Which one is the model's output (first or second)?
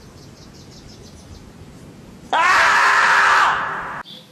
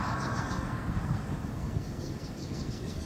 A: second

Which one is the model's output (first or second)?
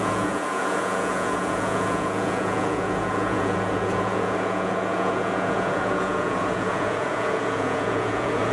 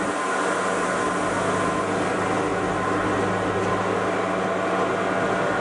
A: first